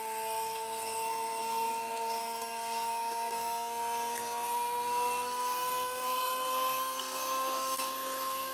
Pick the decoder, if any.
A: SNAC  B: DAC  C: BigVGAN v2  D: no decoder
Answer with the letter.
A